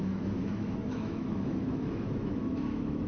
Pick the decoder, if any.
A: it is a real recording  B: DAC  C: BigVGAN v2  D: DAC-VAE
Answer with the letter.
D